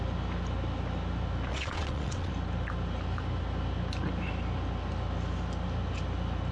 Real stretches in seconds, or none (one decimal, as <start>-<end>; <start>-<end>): 0.0-1.5; 2.3-6.5